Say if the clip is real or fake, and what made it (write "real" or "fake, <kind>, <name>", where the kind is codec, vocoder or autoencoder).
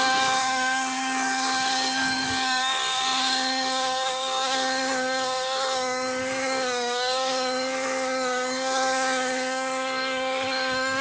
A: fake, codec, DAC